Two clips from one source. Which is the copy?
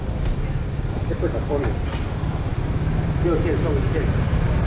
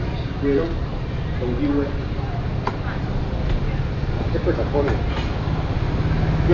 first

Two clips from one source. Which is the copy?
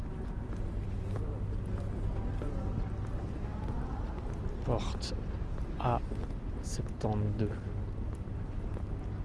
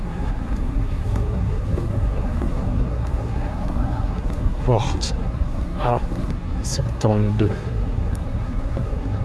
second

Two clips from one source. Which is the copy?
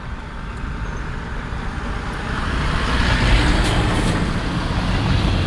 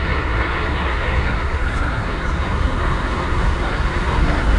second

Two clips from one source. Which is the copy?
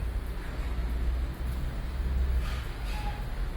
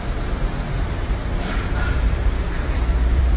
second